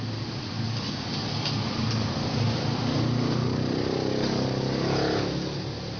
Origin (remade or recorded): recorded